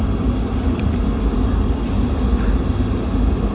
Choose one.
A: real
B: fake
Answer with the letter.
A